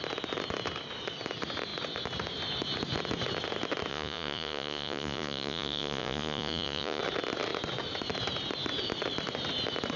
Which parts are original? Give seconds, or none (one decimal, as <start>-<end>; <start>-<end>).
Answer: 0.0-3.9; 7.0-10.0